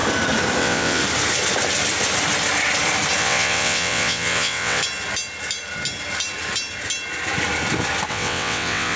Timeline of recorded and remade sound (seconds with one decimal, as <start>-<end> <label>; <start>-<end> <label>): 0.0-0.6 recorded; 0.6-1.0 remade; 1.0-3.2 recorded; 3.2-4.8 remade; 4.8-8.1 recorded; 8.1-9.0 remade